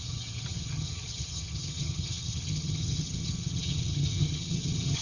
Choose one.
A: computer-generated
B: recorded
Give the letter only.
A